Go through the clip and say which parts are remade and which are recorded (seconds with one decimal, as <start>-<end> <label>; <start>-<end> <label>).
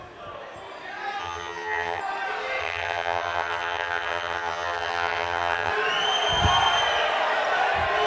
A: 0.0-1.2 recorded; 1.2-2.0 remade; 2.0-2.6 recorded; 2.6-5.7 remade; 5.7-8.1 recorded